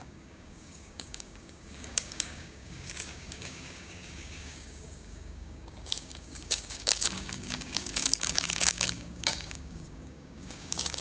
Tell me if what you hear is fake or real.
fake